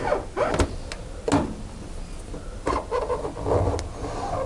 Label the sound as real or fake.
real